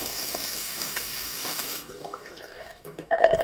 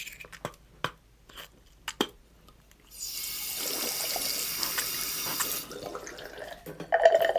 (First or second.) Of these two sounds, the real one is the second